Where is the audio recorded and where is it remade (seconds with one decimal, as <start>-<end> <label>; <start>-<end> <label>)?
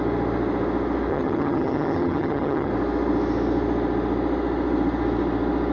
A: 0.0-1.1 recorded; 1.1-2.7 remade; 2.7-5.7 recorded